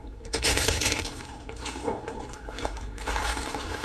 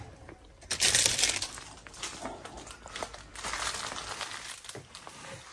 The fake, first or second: first